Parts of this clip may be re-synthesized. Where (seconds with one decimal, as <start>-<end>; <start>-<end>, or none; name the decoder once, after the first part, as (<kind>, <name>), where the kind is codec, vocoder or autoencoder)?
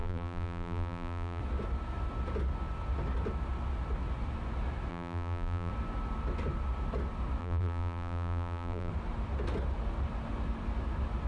0.0-1.4 (vocoder, BigVGAN v2); 4.9-5.7; 7.4-8.9